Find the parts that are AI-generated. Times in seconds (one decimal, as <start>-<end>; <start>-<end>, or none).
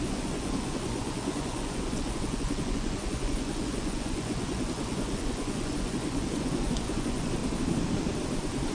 0.0-7.4